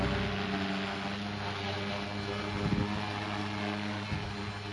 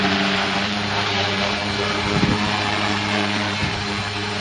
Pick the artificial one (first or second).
second